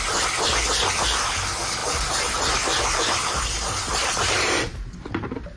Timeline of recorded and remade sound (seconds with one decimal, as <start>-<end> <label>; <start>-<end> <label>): 0.0-1.8 recorded; 1.8-5.6 remade